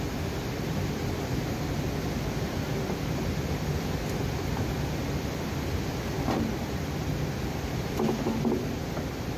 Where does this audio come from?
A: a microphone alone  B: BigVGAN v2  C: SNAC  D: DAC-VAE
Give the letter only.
A